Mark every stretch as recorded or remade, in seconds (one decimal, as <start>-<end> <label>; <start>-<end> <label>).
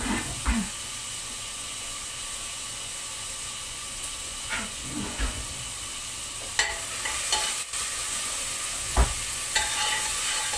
0.0-5.5 remade; 5.5-7.8 recorded; 7.8-10.6 remade